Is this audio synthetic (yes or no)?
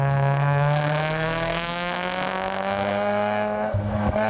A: yes